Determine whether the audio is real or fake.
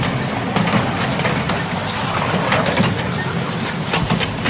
real